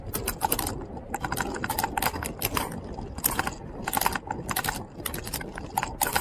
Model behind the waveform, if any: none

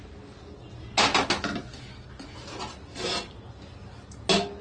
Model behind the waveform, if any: none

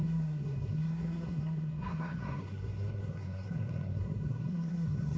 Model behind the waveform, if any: codec, SNAC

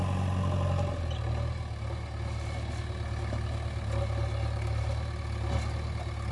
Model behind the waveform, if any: none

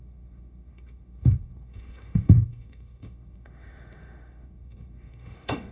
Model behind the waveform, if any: autoencoder, DAC-VAE